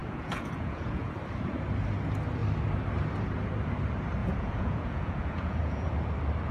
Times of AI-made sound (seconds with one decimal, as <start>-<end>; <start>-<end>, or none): 0.0-1.1; 4.2-5.9